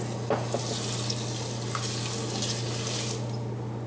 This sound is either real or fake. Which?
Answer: real